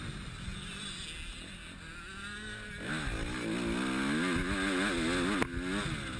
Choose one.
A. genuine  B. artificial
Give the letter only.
A